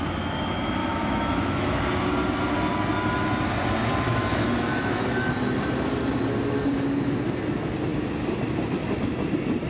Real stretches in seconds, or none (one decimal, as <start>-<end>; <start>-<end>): 0.0-0.8; 1.8-4.1; 5.3-9.7